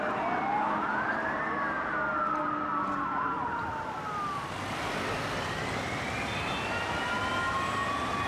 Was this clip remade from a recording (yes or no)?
no